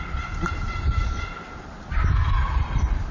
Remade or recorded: remade